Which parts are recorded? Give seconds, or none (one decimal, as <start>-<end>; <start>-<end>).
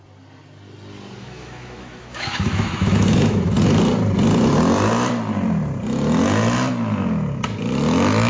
0.0-1.2; 3.5-8.3